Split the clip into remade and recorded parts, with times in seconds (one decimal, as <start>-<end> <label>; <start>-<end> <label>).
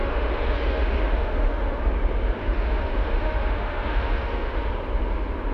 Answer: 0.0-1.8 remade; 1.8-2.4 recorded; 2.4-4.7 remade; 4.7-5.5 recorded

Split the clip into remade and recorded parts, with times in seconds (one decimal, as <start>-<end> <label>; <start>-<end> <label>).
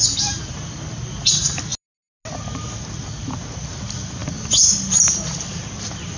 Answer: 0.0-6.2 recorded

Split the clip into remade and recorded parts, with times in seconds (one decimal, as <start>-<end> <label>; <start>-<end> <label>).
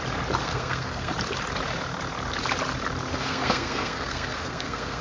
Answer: 0.0-0.4 recorded; 0.4-1.1 remade; 1.1-3.1 recorded; 3.1-5.0 remade